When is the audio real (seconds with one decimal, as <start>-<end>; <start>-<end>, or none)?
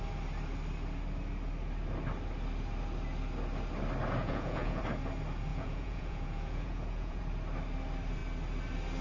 0.0-4.2; 4.8-5.5; 7.2-9.0